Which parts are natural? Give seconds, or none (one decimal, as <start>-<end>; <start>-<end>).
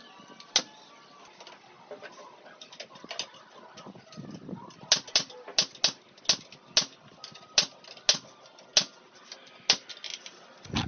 0.0-10.9